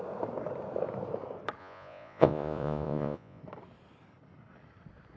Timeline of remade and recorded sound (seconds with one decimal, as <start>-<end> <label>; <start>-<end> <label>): 0.0-1.6 recorded; 1.6-3.4 remade; 3.4-5.2 recorded